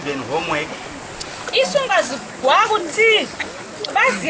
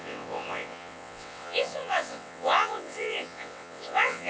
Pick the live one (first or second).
first